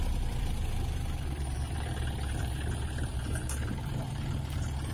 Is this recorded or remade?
remade